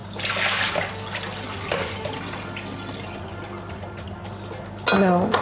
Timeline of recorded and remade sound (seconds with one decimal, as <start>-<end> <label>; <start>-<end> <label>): 0.0-5.4 recorded